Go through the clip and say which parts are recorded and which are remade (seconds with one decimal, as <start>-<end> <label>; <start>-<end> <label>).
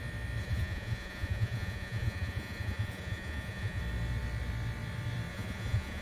0.0-0.4 recorded; 0.4-3.8 remade; 3.8-5.3 recorded; 5.3-6.0 remade